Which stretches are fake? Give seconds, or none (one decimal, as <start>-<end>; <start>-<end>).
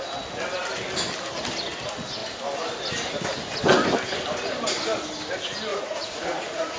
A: 5.7-6.8